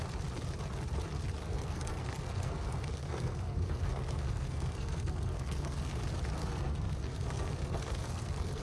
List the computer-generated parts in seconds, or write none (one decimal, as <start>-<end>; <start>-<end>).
1.4-6.0; 6.4-8.6